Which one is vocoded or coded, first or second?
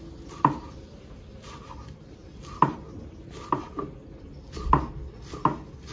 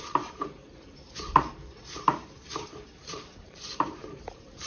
second